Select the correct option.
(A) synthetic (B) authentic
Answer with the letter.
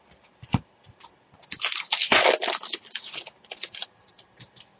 A